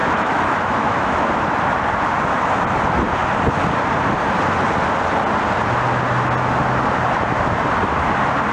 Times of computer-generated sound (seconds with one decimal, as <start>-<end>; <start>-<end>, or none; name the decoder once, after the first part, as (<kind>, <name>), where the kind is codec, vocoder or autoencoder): 0.0-1.3 (autoencoder, DAC-VAE)